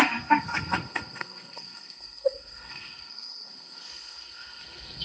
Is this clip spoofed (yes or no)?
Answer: yes